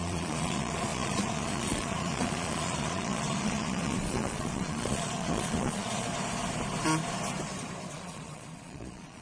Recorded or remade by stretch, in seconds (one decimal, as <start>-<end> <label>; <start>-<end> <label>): 0.0-6.1 remade; 6.1-7.9 recorded; 7.9-9.2 remade